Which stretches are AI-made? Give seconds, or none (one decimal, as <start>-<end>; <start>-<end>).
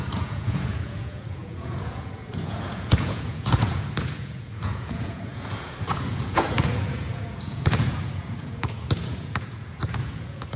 0.0-10.6